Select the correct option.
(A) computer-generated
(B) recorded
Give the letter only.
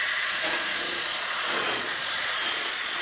A